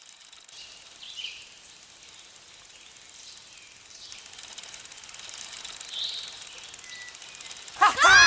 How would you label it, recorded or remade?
recorded